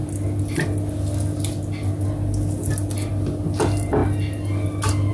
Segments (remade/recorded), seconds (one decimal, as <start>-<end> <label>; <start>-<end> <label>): 0.0-5.1 recorded